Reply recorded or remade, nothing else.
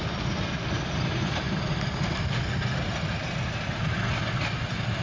recorded